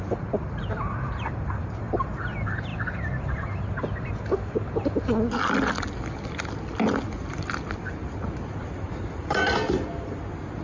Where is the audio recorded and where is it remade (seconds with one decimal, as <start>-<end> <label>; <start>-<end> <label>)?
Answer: 0.0-10.6 recorded